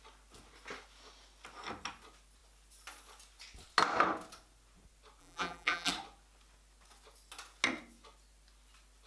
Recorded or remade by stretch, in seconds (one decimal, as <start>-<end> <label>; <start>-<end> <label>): 0.0-5.2 recorded; 5.2-5.9 remade; 5.9-9.1 recorded